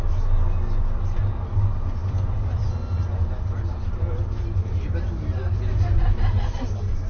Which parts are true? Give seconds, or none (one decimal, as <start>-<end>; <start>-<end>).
0.0-7.1